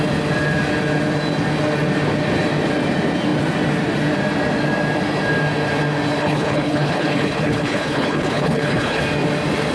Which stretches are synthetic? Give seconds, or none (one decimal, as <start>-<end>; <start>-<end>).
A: 6.2-9.0